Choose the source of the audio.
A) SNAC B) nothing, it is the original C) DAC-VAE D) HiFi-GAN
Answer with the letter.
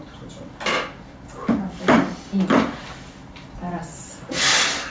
B